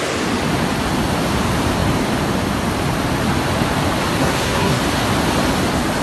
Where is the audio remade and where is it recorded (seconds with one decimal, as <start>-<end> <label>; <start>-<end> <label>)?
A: 0.0-4.2 recorded; 4.2-4.8 remade; 4.8-6.0 recorded